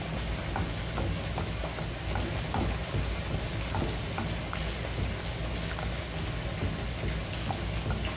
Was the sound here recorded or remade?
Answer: recorded